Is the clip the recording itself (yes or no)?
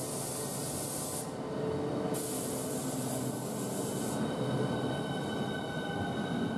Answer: yes